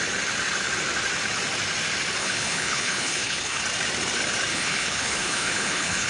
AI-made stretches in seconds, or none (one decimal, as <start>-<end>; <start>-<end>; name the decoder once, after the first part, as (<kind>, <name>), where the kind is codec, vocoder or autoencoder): 2.2-3.6 (codec, HILCodec); 4.5-6.1